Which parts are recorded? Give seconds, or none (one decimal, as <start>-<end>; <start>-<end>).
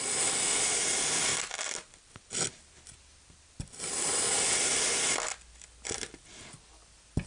0.0-1.3; 4.1-6.8